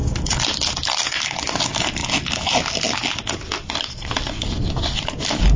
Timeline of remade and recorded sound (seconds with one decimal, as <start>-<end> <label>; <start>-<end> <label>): 0.0-0.7 recorded; 0.7-2.0 remade; 2.0-5.6 recorded